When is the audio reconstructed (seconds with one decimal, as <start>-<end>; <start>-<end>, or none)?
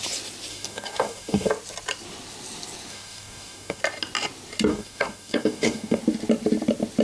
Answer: 0.5-1.5; 2.9-3.8; 4.7-6.0